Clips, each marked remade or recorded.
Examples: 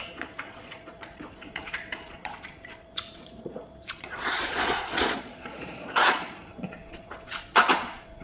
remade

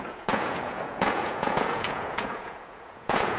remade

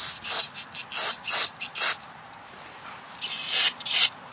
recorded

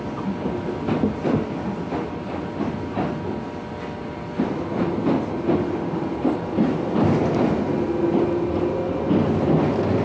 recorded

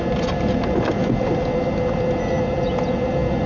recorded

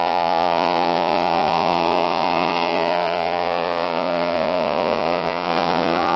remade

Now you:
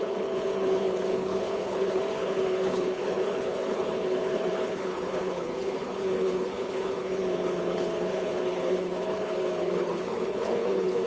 remade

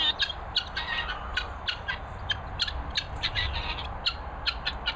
recorded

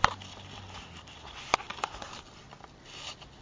recorded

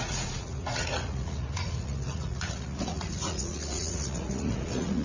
remade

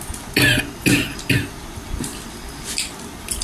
recorded